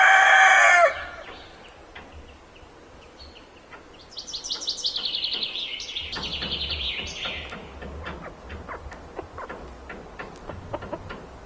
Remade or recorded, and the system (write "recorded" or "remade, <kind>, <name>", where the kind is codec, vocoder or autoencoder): recorded